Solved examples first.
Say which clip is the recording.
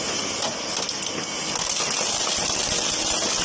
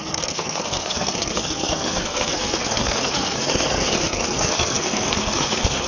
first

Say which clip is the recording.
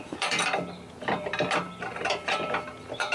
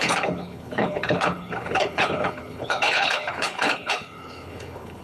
first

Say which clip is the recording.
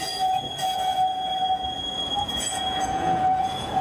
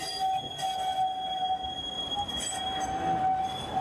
second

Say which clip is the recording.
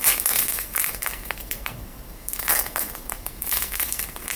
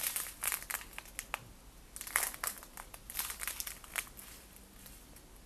second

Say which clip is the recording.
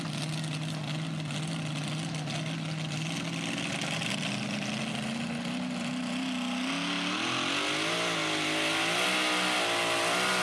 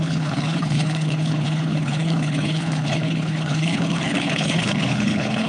first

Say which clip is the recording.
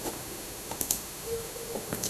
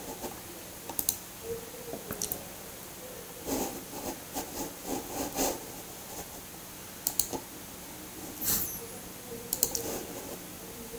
second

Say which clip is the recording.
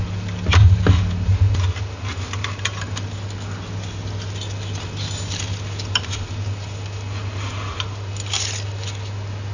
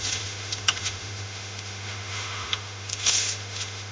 first